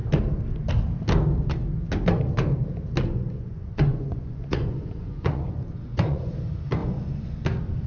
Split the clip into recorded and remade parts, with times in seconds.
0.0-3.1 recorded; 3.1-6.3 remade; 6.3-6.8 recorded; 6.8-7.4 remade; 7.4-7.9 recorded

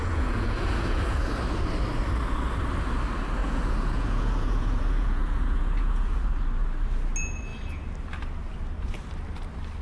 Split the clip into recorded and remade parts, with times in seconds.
0.0-1.2 remade; 1.2-3.4 recorded; 3.4-6.2 remade; 6.2-9.8 recorded

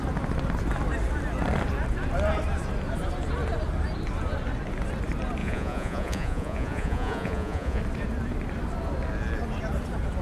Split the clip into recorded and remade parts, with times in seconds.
0.0-5.4 recorded; 5.4-7.8 remade; 7.8-10.2 recorded

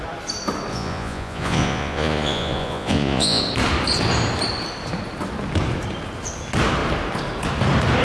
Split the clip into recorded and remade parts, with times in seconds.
0.0-0.7 recorded; 0.7-3.4 remade; 3.4-8.0 recorded